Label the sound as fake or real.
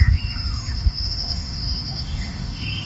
fake